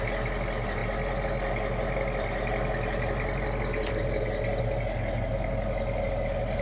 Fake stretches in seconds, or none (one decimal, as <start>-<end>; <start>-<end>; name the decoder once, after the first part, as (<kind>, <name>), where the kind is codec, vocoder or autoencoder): none